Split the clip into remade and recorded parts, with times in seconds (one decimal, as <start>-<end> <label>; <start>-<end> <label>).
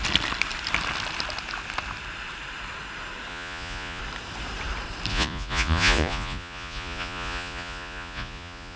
0.0-3.3 recorded; 3.3-4.0 remade; 4.0-5.1 recorded; 5.1-8.8 remade